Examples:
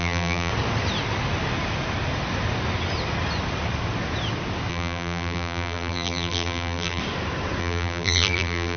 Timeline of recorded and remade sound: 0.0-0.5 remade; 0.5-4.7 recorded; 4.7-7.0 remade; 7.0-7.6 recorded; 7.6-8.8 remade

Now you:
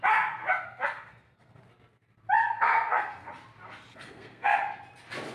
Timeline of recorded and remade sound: 0.0-0.4 recorded; 0.4-1.6 remade; 1.6-2.4 recorded; 2.4-3.3 remade; 3.3-3.9 recorded; 3.9-4.6 remade; 4.6-5.3 recorded

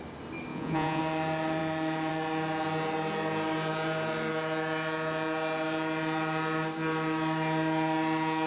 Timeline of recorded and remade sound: 0.0-0.5 recorded; 0.5-1.0 remade; 1.0-8.5 recorded

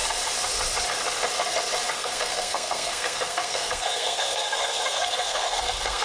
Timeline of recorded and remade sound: 0.0-1.9 recorded; 1.9-6.0 remade

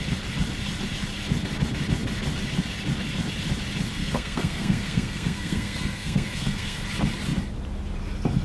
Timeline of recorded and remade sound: 0.0-4.0 recorded; 4.0-6.8 remade; 6.8-8.4 recorded

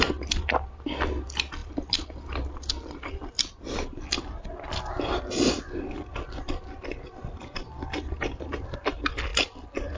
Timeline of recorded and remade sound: 0.0-10.0 recorded

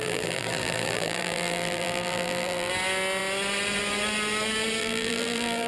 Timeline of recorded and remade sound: 0.0-2.7 remade; 2.7-4.8 recorded; 4.8-5.7 remade